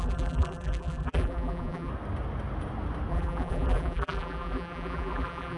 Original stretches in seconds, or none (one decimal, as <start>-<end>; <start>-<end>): 1.9-3.1